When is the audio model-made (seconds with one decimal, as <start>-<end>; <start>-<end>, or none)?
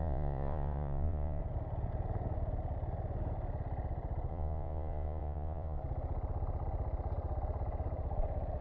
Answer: 0.0-1.4; 4.3-5.8